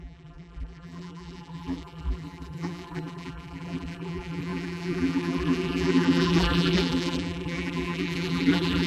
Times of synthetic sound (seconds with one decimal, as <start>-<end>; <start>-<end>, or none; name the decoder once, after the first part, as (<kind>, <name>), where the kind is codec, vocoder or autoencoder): 0.0-8.9 (vocoder, BigVGAN v2)